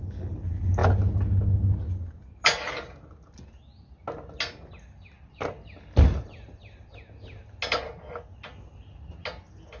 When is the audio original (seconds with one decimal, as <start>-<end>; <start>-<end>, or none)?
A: 0.0-9.8